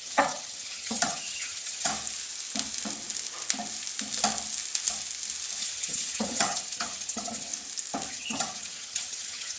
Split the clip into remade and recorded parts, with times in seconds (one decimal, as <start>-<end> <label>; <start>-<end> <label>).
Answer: 0.0-1.9 remade; 1.9-5.6 recorded; 5.6-7.5 remade; 7.5-8.1 recorded; 8.1-9.6 remade